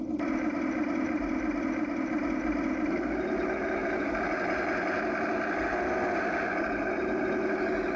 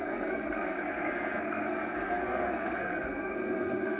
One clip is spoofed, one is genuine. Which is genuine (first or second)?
first